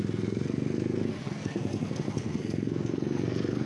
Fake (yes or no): yes